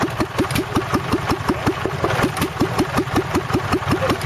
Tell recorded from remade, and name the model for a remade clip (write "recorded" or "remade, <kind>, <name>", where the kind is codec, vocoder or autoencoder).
recorded